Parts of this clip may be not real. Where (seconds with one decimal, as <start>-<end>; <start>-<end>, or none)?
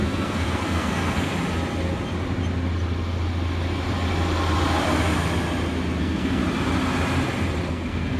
0.0-1.3; 6.0-6.4; 7.7-8.2